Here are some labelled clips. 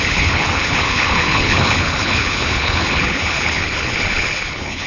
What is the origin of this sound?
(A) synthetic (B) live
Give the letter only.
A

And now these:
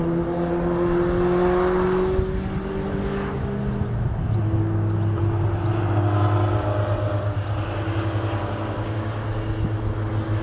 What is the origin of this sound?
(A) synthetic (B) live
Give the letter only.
B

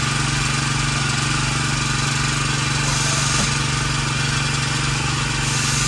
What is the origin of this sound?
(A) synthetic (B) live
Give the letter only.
B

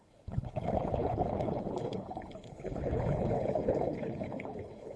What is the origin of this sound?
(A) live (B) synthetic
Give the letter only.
B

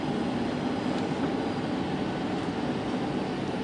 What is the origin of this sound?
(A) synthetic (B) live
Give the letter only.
B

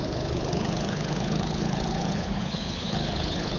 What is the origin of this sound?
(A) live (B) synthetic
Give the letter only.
B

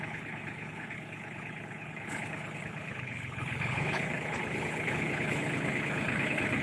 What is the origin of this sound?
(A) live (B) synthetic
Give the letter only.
B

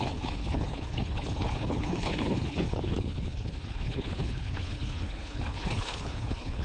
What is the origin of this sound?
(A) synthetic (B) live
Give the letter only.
A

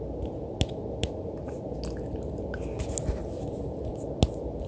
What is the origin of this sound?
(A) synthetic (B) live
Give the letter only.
B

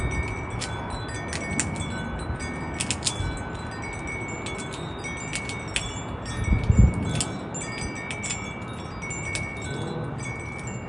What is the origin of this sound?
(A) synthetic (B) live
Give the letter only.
B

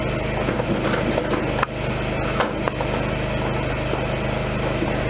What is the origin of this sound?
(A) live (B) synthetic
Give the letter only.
A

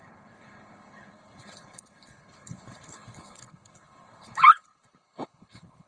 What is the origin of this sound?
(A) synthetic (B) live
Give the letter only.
A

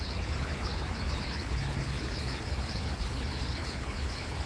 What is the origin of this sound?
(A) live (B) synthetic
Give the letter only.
B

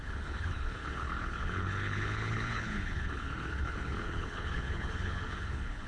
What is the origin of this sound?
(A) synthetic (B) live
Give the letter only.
A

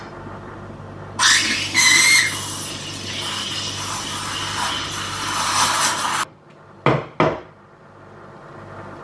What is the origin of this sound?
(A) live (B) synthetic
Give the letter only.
A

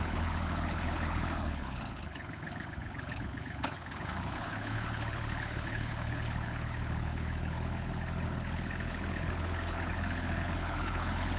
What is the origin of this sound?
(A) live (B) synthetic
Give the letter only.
B